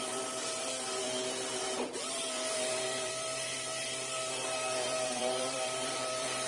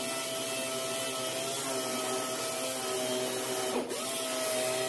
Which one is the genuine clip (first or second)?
second